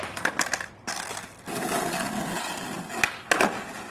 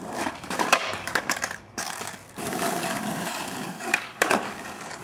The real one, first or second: first